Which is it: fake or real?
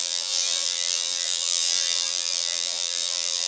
fake